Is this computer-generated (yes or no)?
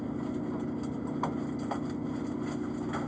no